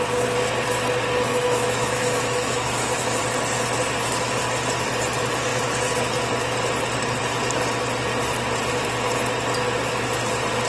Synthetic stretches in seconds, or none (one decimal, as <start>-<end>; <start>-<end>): 1.3-3.2